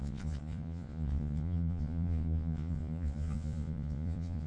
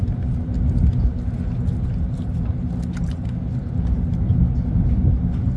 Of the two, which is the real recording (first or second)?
second